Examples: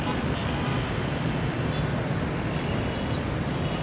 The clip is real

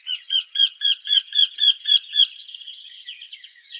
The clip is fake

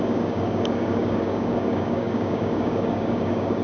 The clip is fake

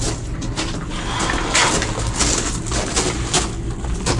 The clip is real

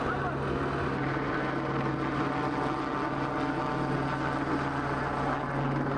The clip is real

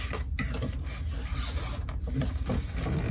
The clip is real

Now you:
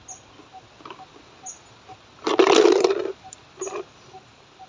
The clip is real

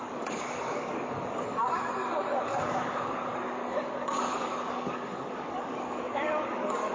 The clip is fake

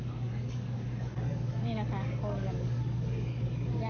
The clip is fake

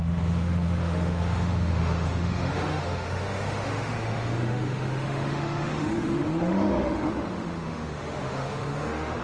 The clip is fake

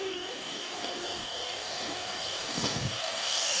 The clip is fake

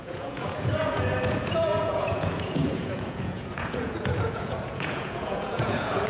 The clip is fake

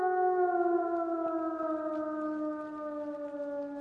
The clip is real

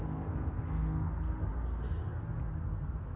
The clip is fake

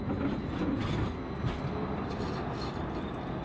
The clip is real